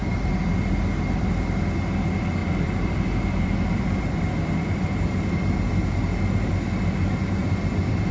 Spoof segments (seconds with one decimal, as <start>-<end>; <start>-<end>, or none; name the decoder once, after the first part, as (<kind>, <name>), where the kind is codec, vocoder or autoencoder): 2.4-5.7 (vocoder, BigVGAN v2)